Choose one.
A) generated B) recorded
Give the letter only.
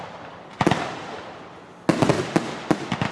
B